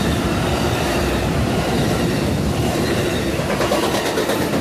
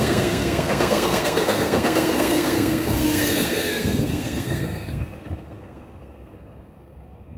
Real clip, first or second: first